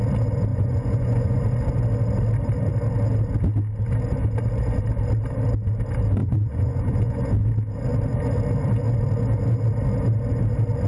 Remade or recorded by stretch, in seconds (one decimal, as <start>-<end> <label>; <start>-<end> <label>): 0.0-0.5 recorded; 0.5-1.4 remade; 1.4-6.2 recorded; 6.2-7.3 remade; 7.3-10.9 recorded